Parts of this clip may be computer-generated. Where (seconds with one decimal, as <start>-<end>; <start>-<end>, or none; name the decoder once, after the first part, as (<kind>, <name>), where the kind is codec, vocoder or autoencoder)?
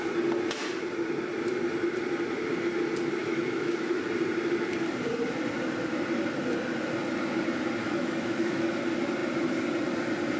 3.2-4.0 (autoencoder, DAC-VAE); 7.8-8.7